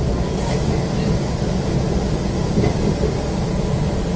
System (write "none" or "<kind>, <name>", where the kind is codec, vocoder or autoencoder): none